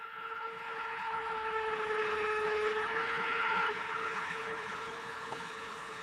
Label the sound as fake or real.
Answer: fake